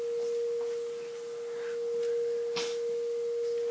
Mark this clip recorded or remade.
recorded